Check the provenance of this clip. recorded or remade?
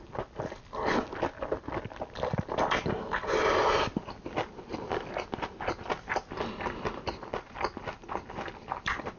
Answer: recorded